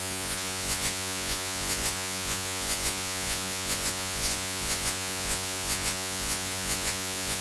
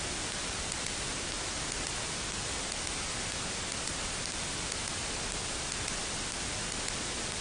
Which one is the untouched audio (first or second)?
second